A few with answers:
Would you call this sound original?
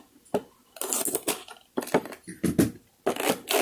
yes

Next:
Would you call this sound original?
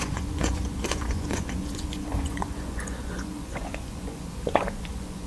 no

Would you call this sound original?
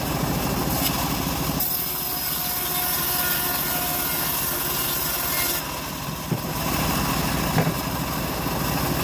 yes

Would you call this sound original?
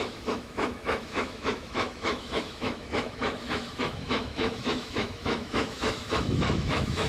no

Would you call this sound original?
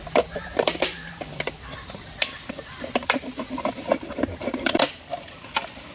no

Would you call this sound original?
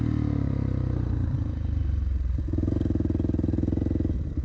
yes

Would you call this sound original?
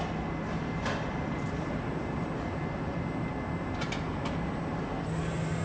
yes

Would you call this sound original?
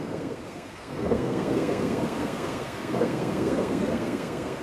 no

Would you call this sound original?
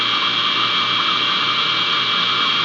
yes